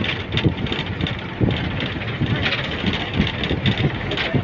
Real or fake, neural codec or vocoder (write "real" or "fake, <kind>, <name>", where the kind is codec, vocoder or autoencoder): real